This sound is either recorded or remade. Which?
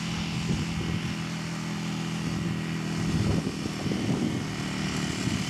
recorded